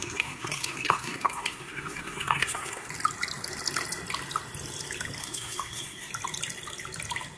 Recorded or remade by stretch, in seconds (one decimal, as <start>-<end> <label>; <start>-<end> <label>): 0.0-2.9 remade; 2.9-5.2 recorded; 5.2-6.1 remade; 6.1-7.4 recorded